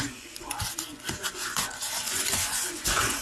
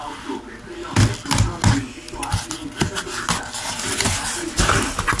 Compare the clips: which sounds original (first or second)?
second